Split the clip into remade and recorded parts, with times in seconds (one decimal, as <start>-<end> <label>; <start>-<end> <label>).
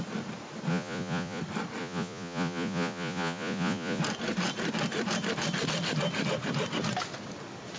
0.0-0.7 recorded; 0.7-1.4 remade; 1.4-1.8 recorded; 1.8-4.0 remade; 4.0-7.8 recorded